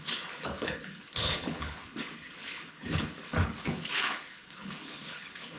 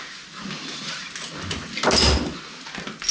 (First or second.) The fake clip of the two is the first